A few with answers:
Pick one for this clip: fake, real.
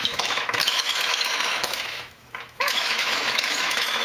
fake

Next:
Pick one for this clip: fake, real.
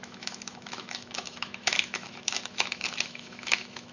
fake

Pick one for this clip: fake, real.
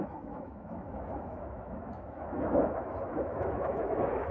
fake